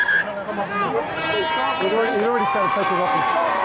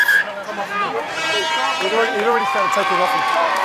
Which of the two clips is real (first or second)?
first